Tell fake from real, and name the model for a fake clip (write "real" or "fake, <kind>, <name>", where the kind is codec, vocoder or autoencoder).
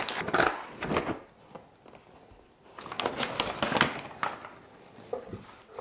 real